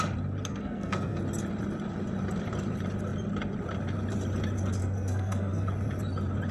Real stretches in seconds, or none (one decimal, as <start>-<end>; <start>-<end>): 0.0-0.5; 1.2-4.8; 5.7-6.5